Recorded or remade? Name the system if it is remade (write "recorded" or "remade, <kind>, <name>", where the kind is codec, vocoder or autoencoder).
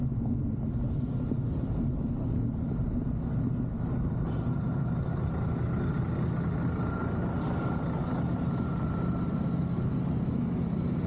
recorded